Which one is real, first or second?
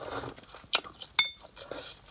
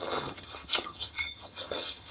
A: first